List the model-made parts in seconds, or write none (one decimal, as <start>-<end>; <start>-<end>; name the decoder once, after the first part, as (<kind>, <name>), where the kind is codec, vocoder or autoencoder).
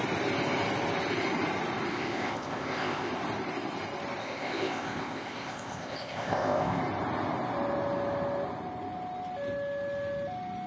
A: 1.9-3.1 (codec, ZipCodec); 4.2-6.8